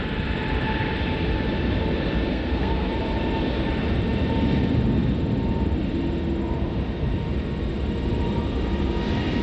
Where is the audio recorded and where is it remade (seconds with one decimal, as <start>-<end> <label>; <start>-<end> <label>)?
0.0-2.3 recorded; 2.3-2.9 remade; 2.9-9.4 recorded

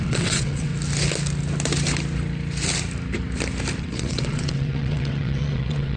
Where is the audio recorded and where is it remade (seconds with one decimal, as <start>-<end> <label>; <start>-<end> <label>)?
0.0-0.7 remade; 0.7-3.8 recorded; 3.8-6.0 remade

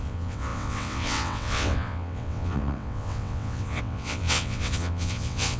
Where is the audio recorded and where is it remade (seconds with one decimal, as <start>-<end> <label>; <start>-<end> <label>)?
0.0-5.6 remade

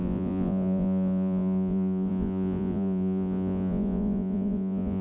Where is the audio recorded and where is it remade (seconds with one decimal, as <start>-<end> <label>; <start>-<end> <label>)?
0.0-5.0 remade

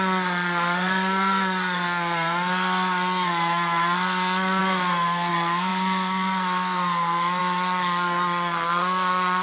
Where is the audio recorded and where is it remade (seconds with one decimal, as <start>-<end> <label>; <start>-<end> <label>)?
0.0-9.4 remade

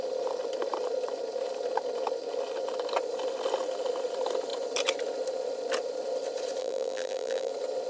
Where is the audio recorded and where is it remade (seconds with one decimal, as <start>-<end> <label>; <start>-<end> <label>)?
0.0-6.6 recorded; 6.6-7.5 remade; 7.5-7.9 recorded